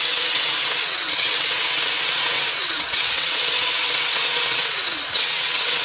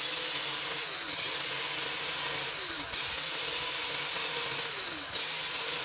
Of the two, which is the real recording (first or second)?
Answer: second